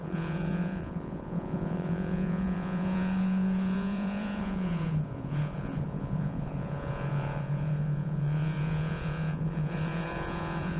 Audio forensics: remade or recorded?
remade